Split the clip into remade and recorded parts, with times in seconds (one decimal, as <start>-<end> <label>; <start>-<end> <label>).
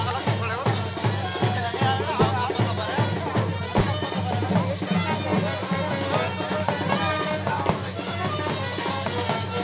0.0-9.6 recorded